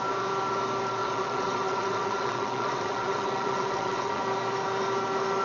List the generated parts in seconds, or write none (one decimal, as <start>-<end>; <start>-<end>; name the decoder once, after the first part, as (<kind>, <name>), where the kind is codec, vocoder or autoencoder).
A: 1.0-4.2 (vocoder, WaveNeXt)